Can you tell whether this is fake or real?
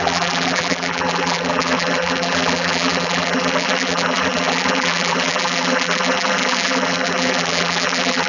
fake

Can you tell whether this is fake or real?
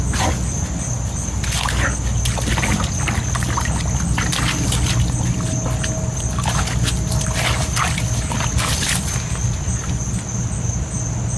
real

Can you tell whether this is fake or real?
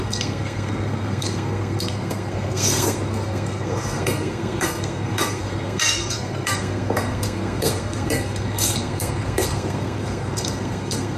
fake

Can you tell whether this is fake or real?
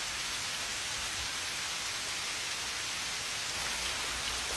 real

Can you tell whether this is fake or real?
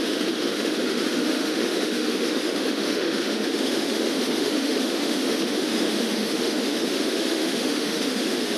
fake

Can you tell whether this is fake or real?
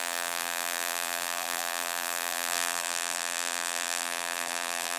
fake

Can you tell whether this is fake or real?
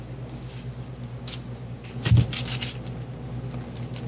real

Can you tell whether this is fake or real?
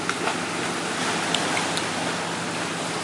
real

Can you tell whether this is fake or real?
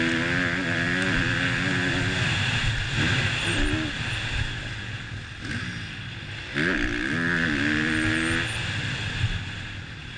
real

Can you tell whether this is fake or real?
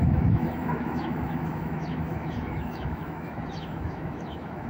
fake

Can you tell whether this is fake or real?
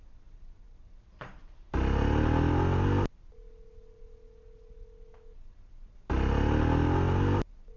real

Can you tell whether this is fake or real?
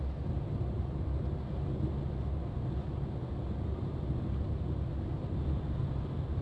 real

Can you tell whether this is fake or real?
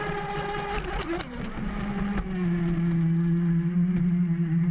real